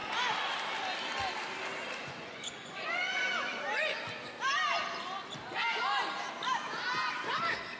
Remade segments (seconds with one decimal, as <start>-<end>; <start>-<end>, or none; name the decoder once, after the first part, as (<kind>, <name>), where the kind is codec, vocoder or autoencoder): 2.0-3.3 (vocoder, Vocos)